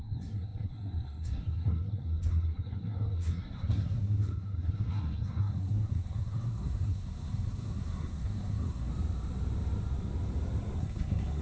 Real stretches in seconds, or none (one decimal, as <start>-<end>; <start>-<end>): 8.9-10.8